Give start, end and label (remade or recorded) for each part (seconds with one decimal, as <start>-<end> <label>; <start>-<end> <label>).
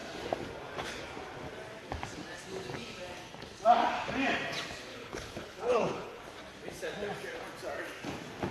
0.0-4.9 recorded; 4.9-6.2 remade; 6.2-8.5 recorded